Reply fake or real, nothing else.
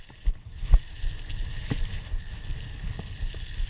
real